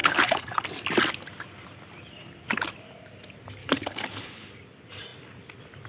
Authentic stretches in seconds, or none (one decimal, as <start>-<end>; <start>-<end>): 0.6-3.6; 4.5-5.9